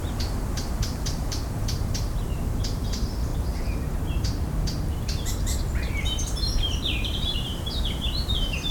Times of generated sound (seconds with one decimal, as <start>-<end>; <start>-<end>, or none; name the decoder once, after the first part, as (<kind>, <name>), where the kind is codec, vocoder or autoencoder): 0.0-3.3 (vocoder, BigVGAN v2); 4.1-8.7